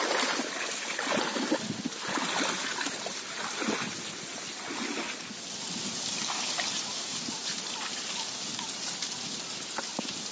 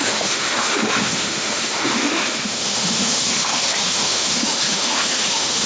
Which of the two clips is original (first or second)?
first